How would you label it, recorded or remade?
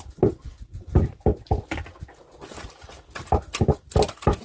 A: recorded